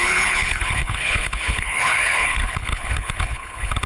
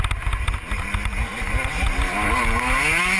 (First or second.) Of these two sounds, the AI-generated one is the first